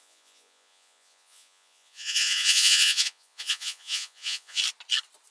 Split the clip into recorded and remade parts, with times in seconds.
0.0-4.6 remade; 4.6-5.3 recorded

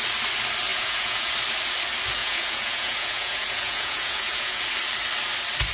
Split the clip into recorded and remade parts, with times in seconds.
0.0-0.7 recorded; 0.7-1.3 remade; 1.3-2.2 recorded; 2.2-4.7 remade; 4.7-5.7 recorded

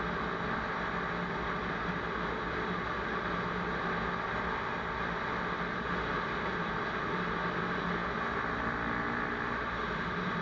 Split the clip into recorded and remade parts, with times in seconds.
0.0-10.4 recorded

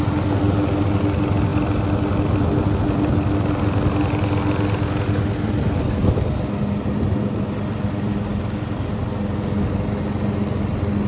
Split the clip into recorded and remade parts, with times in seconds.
0.0-11.1 recorded

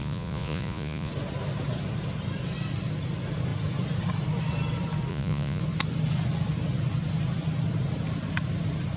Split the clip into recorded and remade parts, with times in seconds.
0.0-1.1 remade; 1.1-5.1 recorded; 5.1-5.6 remade; 5.6-9.0 recorded

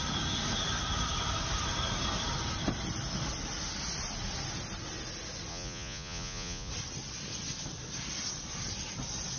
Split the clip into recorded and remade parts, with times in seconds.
0.0-5.5 recorded; 5.5-6.7 remade; 6.7-9.4 recorded